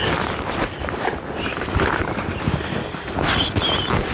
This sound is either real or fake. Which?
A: fake